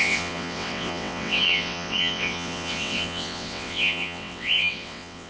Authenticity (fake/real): fake